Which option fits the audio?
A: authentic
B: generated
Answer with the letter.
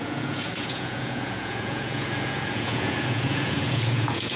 B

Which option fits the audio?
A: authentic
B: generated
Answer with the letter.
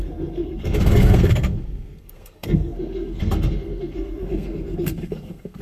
B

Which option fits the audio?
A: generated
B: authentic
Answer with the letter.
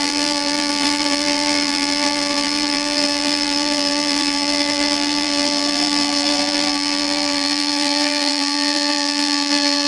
A